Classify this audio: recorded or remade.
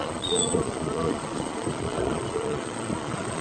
remade